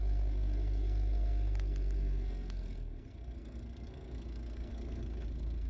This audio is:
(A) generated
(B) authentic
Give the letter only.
A